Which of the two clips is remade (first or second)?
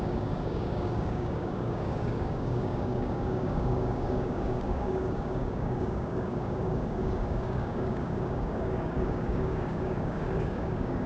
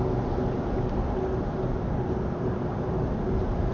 first